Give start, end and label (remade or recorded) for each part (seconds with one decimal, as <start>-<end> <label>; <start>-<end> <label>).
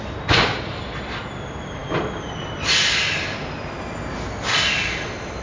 0.0-5.4 recorded